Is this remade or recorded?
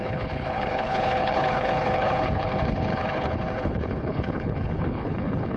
remade